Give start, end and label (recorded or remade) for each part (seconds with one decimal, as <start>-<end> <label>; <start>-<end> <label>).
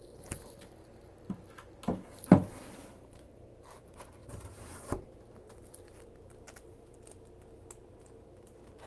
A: 0.0-4.2 recorded; 4.2-5.2 remade; 5.2-8.9 recorded